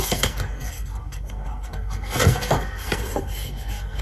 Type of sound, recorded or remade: remade